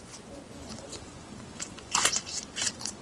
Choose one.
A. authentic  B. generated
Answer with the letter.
B